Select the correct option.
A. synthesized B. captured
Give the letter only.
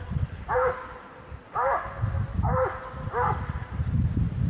B